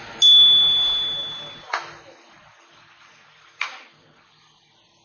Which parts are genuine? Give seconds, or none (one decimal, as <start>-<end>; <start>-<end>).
0.0-5.0